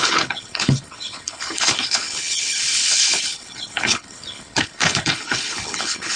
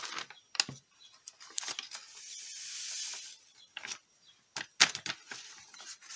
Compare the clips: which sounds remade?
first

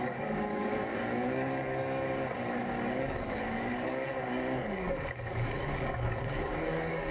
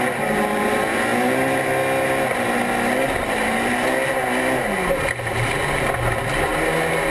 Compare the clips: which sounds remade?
first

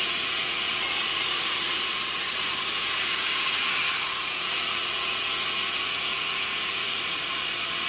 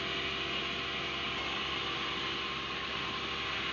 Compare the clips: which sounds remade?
first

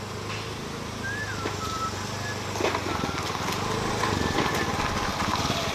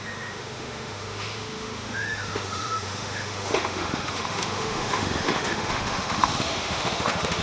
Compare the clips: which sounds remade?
second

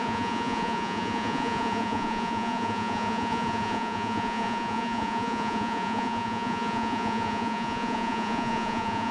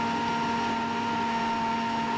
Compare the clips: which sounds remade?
first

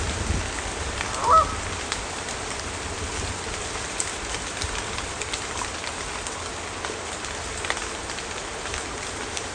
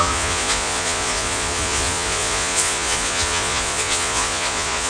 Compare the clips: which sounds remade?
second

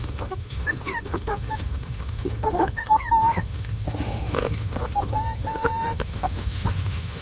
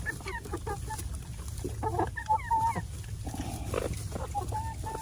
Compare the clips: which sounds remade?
first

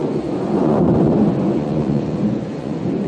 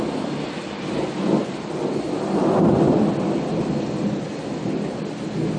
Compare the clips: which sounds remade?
first